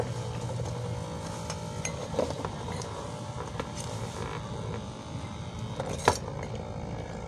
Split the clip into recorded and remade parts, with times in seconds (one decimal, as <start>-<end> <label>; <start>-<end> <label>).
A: 0.0-2.0 recorded; 2.0-3.0 remade; 3.0-7.3 recorded